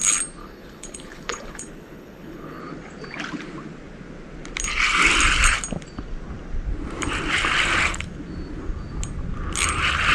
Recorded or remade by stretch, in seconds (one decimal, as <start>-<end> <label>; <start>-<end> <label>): 0.0-0.4 recorded; 0.4-2.6 remade; 2.6-10.1 recorded